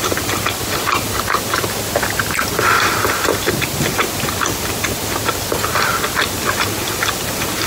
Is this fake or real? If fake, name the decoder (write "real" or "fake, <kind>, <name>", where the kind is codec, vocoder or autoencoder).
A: real